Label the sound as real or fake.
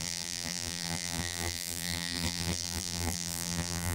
fake